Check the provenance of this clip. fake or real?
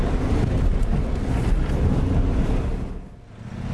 real